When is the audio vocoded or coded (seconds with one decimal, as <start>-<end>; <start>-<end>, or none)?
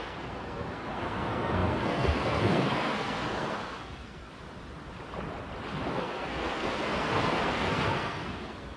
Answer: 0.0-4.3; 5.9-8.8